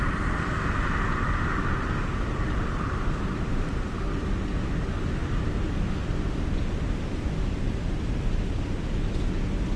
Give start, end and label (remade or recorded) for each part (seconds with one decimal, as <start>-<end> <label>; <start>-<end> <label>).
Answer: 0.0-9.8 recorded